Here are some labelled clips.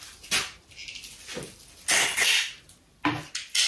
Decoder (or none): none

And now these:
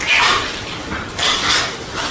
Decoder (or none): none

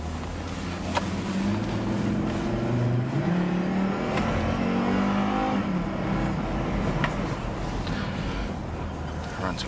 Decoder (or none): none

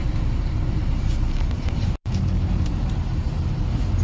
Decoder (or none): vocoder, BigVGAN v2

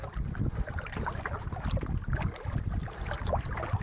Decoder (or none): none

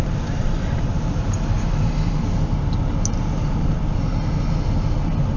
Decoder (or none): none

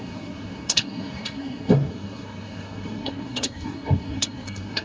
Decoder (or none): codec, SNAC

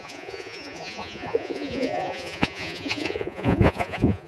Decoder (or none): vocoder, Vocos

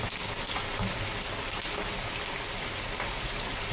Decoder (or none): none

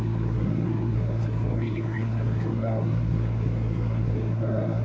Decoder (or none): codec, SNAC